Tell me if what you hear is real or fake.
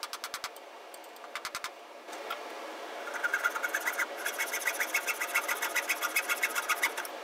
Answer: real